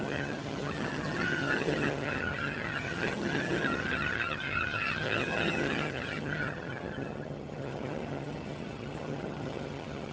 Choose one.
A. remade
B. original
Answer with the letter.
A